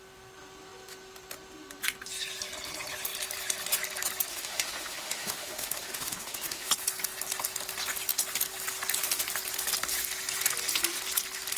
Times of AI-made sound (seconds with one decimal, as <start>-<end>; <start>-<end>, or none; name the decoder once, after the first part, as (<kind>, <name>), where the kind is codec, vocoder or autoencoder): 4.3-6.7 (autoencoder, DAC-VAE)